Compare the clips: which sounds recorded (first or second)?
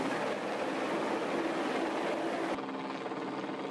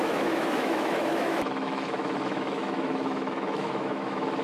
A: first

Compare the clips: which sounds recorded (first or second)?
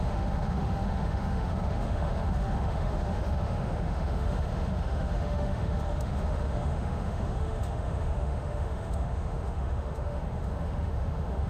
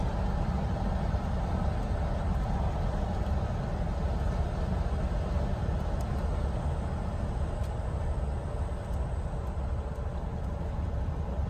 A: second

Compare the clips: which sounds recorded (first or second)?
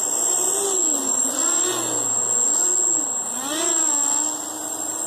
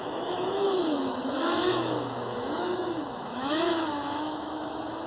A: first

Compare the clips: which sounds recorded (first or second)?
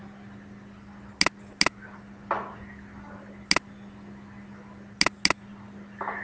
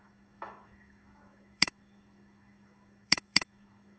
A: first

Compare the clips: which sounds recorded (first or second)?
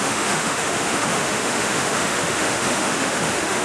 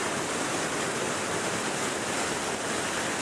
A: second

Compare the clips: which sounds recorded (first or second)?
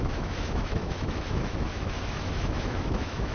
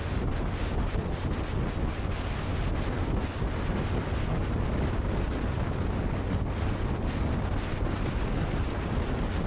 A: second